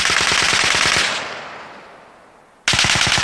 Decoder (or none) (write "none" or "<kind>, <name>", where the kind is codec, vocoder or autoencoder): none